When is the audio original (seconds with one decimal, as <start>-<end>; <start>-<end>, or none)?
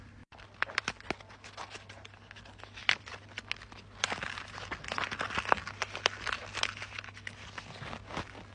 0.0-8.5